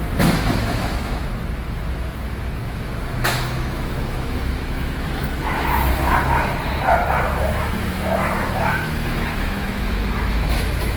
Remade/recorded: remade